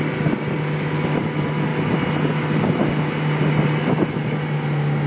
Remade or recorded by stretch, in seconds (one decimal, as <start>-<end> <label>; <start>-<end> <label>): 0.0-5.1 recorded